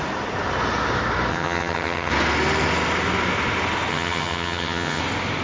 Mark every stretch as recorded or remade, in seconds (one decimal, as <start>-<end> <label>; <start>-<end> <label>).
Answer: 0.0-1.3 recorded; 1.3-2.1 remade; 2.1-3.9 recorded; 3.9-5.0 remade; 5.0-5.4 recorded